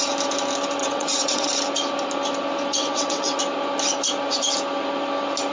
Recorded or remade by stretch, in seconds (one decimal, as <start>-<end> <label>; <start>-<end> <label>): 0.0-0.8 recorded; 0.8-1.5 remade; 1.5-2.7 recorded; 2.7-3.4 remade; 3.4-5.5 recorded